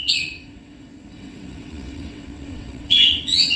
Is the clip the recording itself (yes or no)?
no